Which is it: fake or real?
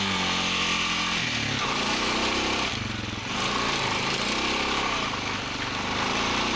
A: real